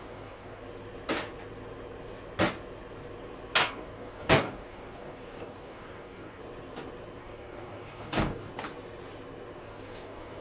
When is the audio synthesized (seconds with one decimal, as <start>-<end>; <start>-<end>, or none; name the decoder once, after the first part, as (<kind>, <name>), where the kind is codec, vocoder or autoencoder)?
0.0-0.6 (codec, DAC); 3.6-6.4; 7.2-8.5; 9.6-10.4

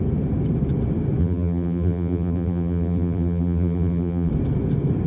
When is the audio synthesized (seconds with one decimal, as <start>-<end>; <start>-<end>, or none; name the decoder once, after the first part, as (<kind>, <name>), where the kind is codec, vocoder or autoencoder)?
1.2-4.3 (vocoder, BigVGAN v2)

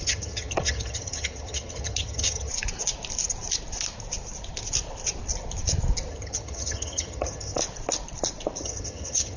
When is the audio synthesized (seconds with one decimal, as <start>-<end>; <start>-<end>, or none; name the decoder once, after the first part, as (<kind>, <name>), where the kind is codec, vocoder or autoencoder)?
0.0-2.5 (vocoder, HiFi-GAN); 6.1-7.6; 8.6-9.4

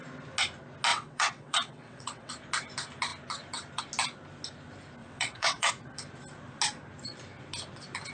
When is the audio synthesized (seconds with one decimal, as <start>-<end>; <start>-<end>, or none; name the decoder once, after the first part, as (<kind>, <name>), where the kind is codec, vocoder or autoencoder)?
0.9-2.3 (vocoder, WaveNeXt); 5.0-5.7

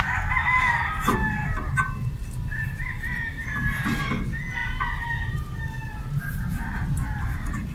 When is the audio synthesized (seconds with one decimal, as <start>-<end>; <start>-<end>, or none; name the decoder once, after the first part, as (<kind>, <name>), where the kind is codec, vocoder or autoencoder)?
2.5-3.1 (vocoder, BigVGAN v2)